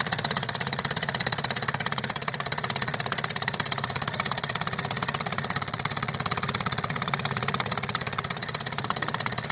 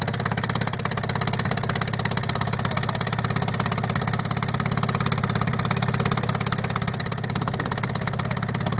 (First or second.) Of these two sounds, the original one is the second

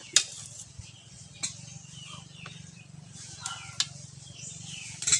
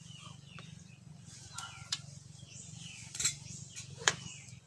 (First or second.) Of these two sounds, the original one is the first